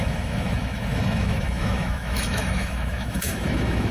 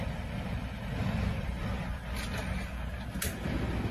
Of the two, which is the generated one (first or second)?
first